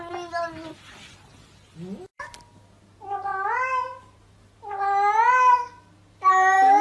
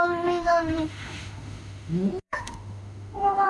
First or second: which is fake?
second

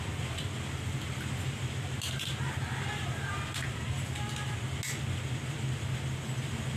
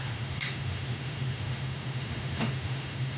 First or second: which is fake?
second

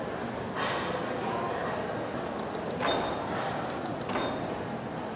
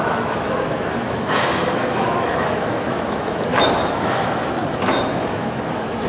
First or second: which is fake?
second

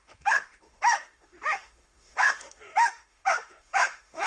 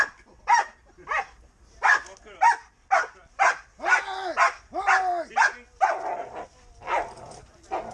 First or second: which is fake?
first